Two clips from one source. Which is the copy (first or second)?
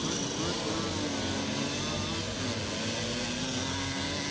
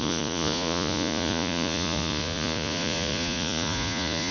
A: second